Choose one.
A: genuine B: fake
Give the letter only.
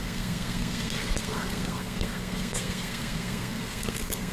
B